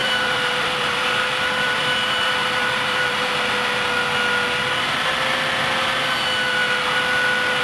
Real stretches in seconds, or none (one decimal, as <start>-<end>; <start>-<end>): 3.3-7.6